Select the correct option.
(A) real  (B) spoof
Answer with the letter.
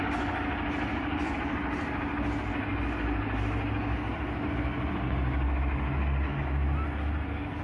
A